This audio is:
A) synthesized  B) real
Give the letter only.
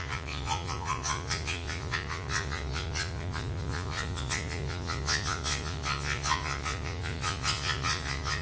A